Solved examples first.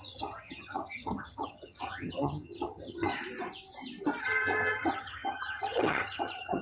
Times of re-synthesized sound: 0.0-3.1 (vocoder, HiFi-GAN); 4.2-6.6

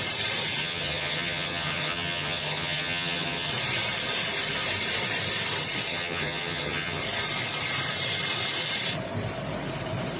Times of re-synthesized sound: 0.6-3.5 (vocoder, HiFi-GAN); 5.9-7.0

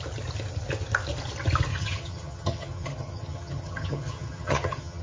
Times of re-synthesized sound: 1.7-5.0 (vocoder, HiFi-GAN)

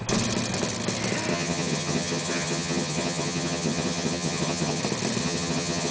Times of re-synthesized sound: 1.3-4.8 (vocoder, HiFi-GAN); 5.2-5.9

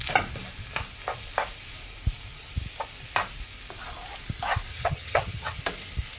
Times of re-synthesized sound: 4.7-5.6 (vocoder, HiFi-GAN)